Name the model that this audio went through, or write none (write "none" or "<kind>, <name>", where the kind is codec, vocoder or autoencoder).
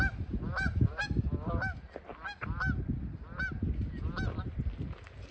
none